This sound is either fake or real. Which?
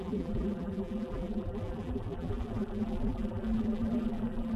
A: fake